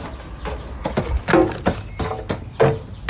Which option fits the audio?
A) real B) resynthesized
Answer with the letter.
A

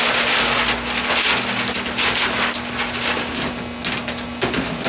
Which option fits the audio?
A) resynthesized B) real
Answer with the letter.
B